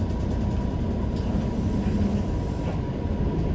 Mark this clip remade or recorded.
recorded